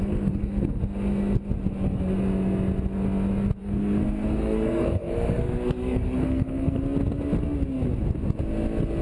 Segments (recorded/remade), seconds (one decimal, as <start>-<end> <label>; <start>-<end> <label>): 0.0-0.8 remade; 0.8-3.6 recorded; 3.6-6.8 remade; 6.8-9.0 recorded

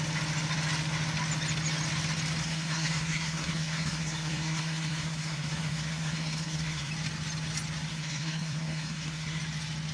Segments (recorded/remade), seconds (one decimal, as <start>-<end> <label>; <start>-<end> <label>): 0.0-2.4 recorded; 2.4-6.9 remade; 6.9-7.9 recorded; 7.9-9.4 remade; 9.4-9.9 recorded

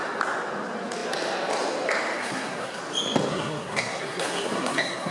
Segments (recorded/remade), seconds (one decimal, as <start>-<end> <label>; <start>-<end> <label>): 0.0-2.2 recorded; 2.2-2.8 remade; 2.8-3.3 recorded; 3.3-5.1 remade

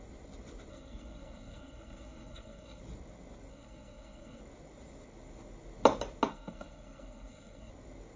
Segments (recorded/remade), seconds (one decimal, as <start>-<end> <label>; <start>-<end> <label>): 0.0-0.7 recorded; 0.7-2.8 remade; 2.8-3.5 recorded; 3.5-4.4 remade; 4.4-6.3 recorded; 6.3-7.7 remade; 7.7-8.2 recorded